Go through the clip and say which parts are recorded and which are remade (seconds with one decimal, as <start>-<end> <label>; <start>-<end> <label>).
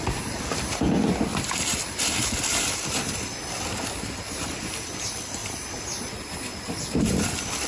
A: 0.0-1.3 recorded; 1.3-4.7 remade; 4.7-5.4 recorded; 5.4-6.1 remade; 6.1-6.5 recorded; 6.5-7.7 remade